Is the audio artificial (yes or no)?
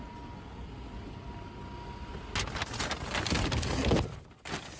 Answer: no